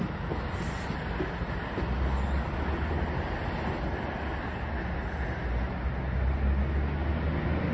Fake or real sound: real